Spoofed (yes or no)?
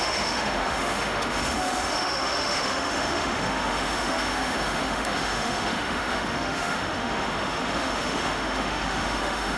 yes